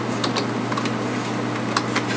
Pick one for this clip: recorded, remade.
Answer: recorded